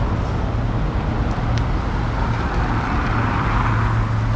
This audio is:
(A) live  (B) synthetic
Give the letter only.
A